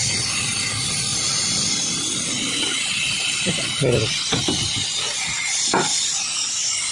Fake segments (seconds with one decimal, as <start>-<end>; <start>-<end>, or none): none